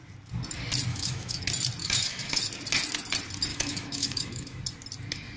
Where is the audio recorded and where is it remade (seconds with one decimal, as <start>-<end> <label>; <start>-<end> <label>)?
0.0-0.9 recorded; 0.9-1.4 remade; 1.4-1.8 recorded; 1.8-2.4 remade; 2.4-3.5 recorded; 3.5-4.6 remade; 4.6-5.4 recorded